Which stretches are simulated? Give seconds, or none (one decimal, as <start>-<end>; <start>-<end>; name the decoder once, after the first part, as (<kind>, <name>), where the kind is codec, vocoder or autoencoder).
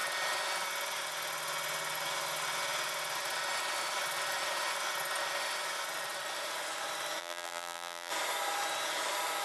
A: 7.2-8.1 (vocoder, BigVGAN v2)